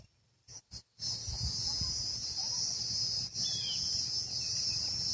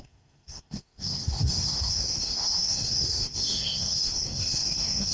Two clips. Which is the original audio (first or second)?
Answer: first